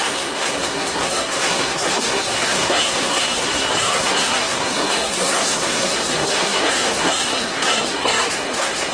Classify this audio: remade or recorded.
remade